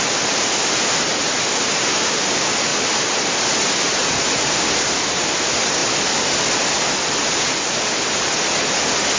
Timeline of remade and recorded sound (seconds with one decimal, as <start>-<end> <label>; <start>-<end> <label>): 0.0-9.2 recorded